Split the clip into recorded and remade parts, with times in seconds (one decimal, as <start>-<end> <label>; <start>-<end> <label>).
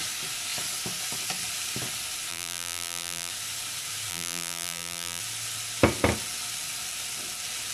0.0-2.3 recorded; 2.3-3.3 remade; 3.3-4.1 recorded; 4.1-5.2 remade; 5.2-7.7 recorded